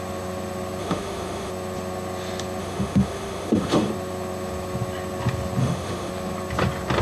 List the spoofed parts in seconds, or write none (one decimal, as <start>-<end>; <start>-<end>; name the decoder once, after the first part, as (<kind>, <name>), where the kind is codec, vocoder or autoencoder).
0.8-1.5 (autoencoder, DAC-VAE); 2.6-3.9; 5.6-6.1